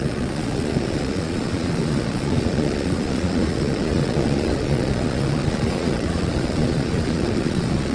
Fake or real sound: fake